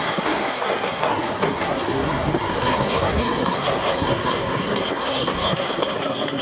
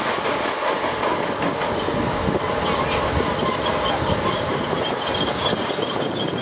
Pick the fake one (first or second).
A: first